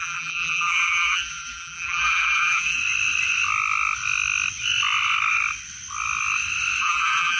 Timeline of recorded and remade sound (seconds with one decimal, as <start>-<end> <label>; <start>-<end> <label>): 0.0-2.8 remade; 2.8-6.8 recorded; 6.8-7.4 remade